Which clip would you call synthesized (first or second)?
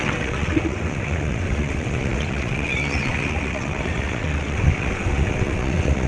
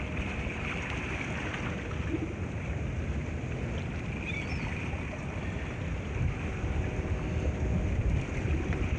first